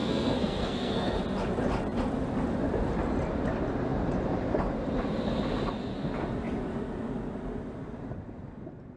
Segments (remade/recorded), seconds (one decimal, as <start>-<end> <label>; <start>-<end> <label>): 0.0-1.2 remade; 1.2-9.0 recorded